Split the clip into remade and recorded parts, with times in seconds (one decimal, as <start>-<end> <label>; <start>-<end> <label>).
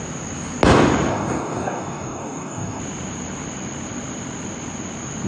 0.0-1.1 recorded; 1.1-2.8 remade; 2.8-5.3 recorded